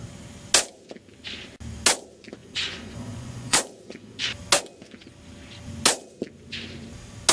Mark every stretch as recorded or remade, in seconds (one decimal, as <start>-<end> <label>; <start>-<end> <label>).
0.0-2.4 recorded; 2.4-4.2 remade; 4.2-7.3 recorded